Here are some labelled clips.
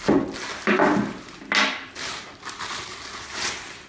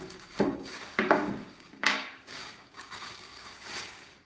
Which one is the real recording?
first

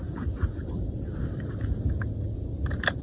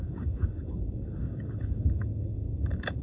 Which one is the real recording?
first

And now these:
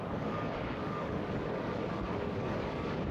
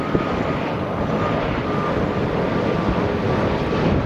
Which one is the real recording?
second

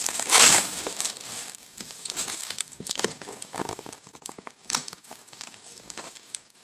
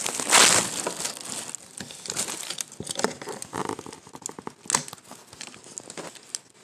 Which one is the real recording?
second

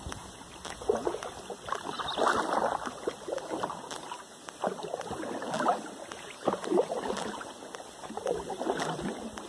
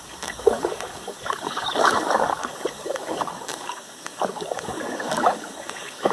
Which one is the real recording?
first